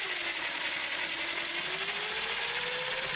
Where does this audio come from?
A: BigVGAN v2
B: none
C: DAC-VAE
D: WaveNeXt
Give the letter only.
B